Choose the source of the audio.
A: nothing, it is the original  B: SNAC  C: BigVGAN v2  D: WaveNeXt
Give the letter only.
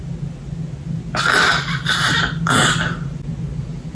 A